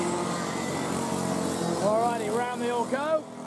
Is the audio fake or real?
real